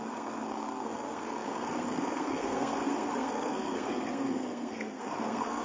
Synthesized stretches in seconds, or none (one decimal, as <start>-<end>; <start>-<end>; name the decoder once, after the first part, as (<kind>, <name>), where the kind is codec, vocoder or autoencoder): 0.0-5.6 (codec, SNAC)